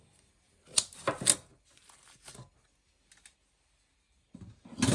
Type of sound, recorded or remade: recorded